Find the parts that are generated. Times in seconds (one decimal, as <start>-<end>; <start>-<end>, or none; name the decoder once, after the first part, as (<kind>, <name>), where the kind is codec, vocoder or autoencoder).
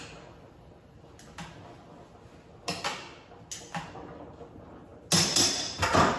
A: none